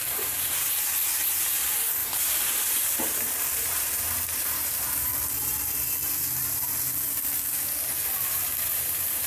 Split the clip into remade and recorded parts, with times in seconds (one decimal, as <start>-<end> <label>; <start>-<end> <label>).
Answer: 0.0-5.1 remade; 5.1-8.2 recorded; 8.2-9.3 remade